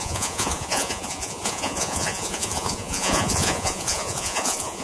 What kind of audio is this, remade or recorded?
remade